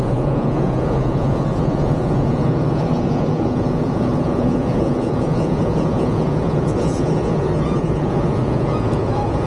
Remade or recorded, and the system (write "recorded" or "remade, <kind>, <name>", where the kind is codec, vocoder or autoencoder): remade, vocoder, Vocos